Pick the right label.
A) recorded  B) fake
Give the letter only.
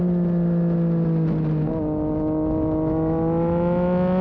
A